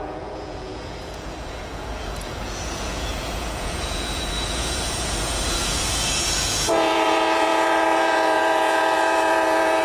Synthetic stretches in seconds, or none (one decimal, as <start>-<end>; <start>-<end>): 0.0-9.8